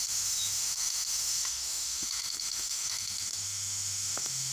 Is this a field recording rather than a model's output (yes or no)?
no